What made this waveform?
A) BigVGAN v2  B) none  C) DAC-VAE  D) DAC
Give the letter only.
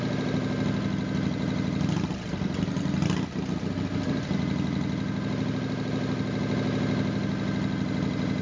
B